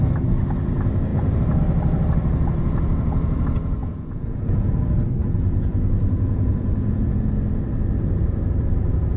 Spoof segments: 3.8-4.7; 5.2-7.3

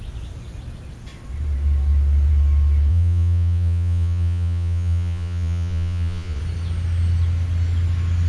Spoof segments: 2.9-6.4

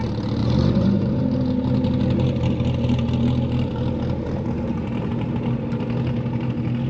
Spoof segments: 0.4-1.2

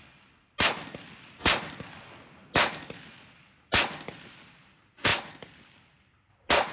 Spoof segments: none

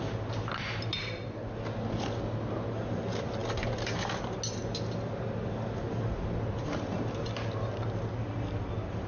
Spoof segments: none